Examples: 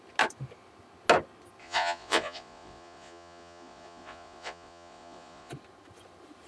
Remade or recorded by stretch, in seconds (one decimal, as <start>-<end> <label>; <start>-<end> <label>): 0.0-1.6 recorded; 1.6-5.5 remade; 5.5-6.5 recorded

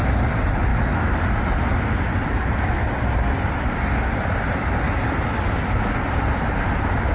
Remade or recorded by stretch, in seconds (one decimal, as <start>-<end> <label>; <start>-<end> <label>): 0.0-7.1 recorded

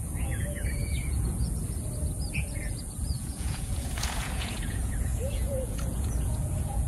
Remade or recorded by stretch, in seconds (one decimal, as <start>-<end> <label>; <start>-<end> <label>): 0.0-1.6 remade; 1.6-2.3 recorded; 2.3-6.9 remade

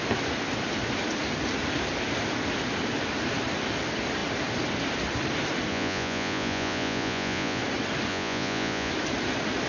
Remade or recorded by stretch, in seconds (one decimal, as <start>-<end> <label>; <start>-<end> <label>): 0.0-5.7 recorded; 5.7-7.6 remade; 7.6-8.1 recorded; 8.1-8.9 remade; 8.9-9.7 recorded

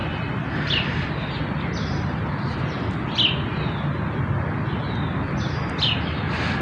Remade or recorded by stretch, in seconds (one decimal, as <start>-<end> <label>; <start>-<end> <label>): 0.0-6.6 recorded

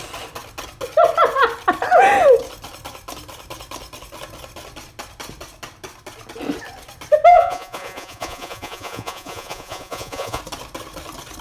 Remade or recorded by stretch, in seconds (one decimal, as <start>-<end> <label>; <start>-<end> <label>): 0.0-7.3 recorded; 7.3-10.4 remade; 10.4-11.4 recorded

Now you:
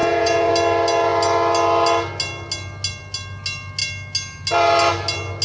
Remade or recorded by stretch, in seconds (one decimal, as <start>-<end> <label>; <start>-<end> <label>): 0.0-0.5 remade; 0.5-5.4 recorded